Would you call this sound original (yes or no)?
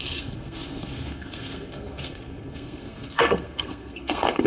no